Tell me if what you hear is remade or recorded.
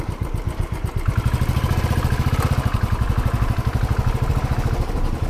recorded